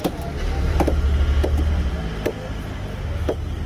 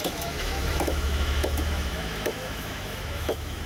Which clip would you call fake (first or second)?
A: second